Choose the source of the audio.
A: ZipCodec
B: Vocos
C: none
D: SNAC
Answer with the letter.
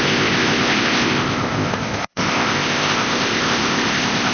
A